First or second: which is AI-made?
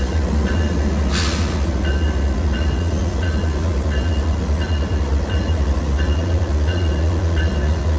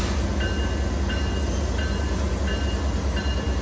first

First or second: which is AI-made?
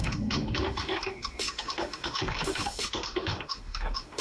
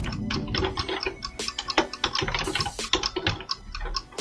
first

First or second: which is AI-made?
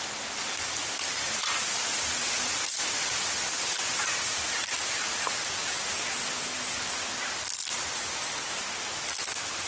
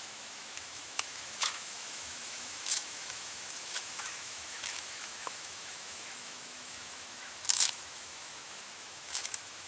second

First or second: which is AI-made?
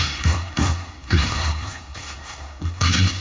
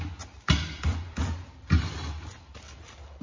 first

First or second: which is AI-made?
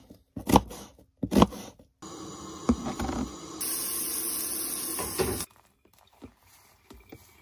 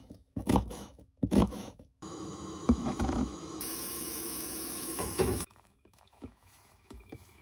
second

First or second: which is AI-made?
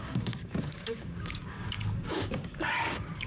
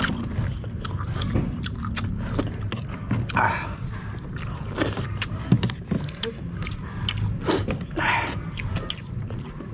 first